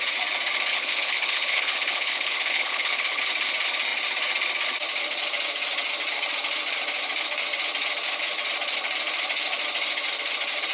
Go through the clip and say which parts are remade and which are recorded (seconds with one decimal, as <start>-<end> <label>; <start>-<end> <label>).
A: 0.0-0.7 recorded; 0.7-3.2 remade; 3.2-10.7 recorded